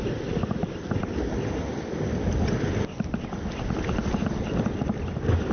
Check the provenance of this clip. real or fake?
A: real